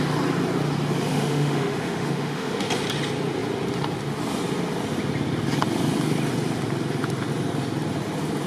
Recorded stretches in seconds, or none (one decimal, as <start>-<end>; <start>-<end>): 0.0-1.1; 2.7-8.5